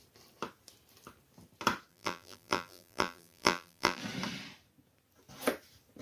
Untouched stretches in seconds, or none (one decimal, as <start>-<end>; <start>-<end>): 0.0-1.9; 4.0-6.0